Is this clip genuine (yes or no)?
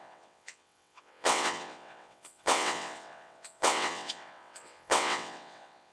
no